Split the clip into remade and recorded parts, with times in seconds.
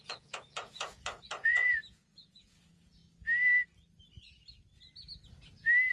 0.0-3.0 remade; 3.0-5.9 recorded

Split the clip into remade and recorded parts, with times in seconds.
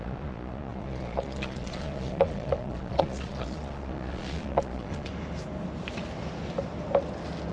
0.0-5.1 remade; 5.1-7.5 recorded